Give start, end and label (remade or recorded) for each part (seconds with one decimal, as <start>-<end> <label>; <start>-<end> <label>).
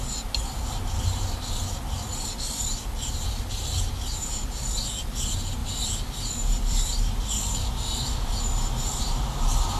0.0-5.6 recorded; 5.6-7.1 remade; 7.1-9.8 recorded